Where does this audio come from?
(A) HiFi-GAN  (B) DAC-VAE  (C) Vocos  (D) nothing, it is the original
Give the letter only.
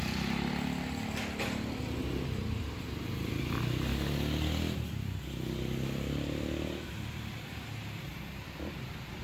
D